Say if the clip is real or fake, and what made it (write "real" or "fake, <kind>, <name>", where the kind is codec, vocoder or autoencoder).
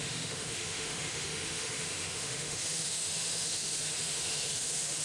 fake, autoencoder, DAC-VAE